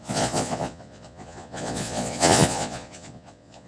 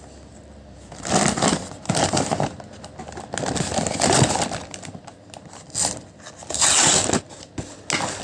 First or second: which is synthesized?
first